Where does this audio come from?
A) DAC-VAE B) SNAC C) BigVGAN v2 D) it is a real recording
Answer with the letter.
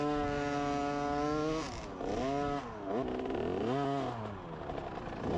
D